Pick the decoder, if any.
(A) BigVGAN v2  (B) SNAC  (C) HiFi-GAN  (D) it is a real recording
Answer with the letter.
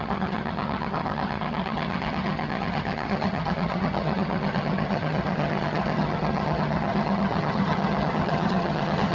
C